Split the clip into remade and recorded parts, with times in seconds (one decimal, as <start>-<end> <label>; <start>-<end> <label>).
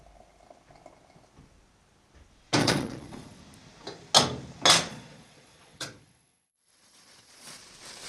0.0-2.6 recorded; 2.6-3.4 remade; 3.4-4.9 recorded; 4.9-7.6 remade; 7.6-8.1 recorded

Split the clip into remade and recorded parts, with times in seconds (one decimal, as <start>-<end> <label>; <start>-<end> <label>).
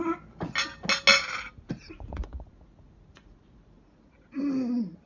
0.0-1.8 recorded; 1.8-4.4 remade; 4.4-5.1 recorded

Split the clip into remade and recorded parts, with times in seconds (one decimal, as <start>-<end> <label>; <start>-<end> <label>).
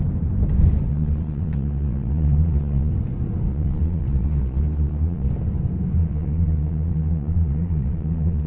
0.0-0.9 recorded; 0.9-2.9 remade; 2.9-3.5 recorded; 3.5-5.3 remade; 5.3-6.0 recorded; 6.0-8.5 remade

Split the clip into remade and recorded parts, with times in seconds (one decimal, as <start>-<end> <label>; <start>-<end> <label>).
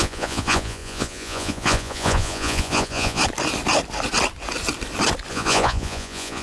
0.0-3.2 remade; 3.2-5.3 recorded; 5.3-6.4 remade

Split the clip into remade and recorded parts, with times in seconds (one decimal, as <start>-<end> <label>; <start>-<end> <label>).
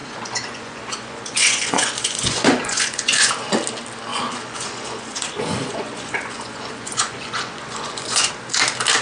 0.0-3.3 remade; 3.3-4.1 recorded; 4.1-8.3 remade; 8.3-9.0 recorded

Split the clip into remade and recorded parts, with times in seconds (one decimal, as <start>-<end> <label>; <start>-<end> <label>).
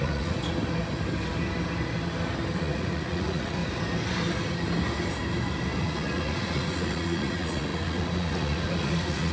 0.0-0.4 remade; 0.4-2.6 recorded; 2.6-3.6 remade; 3.6-5.8 recorded; 5.8-9.3 remade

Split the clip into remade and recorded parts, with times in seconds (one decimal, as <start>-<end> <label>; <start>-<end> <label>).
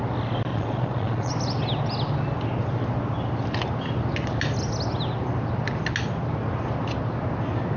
0.0-0.5 recorded; 0.5-1.3 remade; 1.3-7.8 recorded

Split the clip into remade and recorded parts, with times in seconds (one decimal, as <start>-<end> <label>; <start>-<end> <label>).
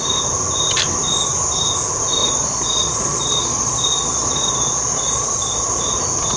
0.0-2.2 recorded; 2.2-6.0 remade; 6.0-6.4 recorded